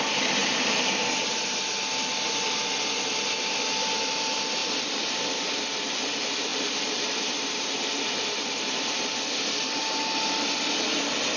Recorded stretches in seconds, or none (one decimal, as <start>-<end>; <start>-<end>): 0.0-0.4; 1.6-4.6; 5.6-6.5; 9.2-11.4